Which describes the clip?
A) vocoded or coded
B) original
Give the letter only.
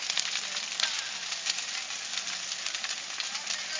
B